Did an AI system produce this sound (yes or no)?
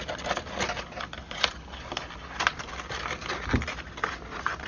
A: no